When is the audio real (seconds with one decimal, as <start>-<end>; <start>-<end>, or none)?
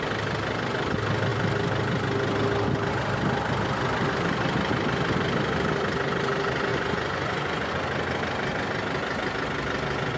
0.0-6.7; 7.7-10.2